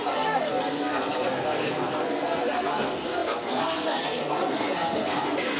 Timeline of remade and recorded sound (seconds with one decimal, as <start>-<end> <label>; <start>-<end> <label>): 0.0-5.6 remade